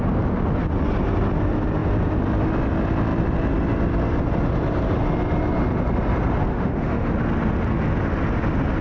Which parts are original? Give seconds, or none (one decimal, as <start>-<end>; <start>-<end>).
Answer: 0.0-6.5; 7.1-8.8